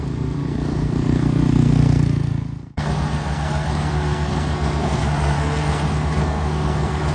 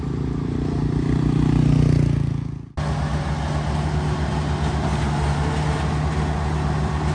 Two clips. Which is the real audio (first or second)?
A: second